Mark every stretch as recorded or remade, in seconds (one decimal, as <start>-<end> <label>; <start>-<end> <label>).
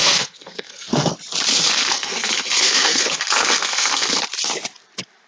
0.0-1.1 remade; 1.1-1.5 recorded; 1.5-4.2 remade; 4.2-5.3 recorded